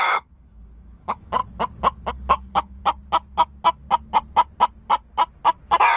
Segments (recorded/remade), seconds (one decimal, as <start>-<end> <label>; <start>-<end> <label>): 0.0-1.4 remade; 1.4-2.1 recorded; 2.1-2.8 remade; 2.8-6.0 recorded